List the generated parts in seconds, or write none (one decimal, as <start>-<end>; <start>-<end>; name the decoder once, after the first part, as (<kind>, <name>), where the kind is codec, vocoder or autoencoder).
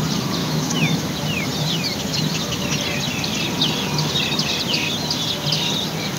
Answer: 0.4-1.1 (autoencoder, DAC-VAE)